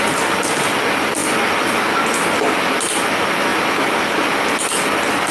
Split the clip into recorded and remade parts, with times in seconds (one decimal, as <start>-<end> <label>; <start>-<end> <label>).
0.0-5.3 recorded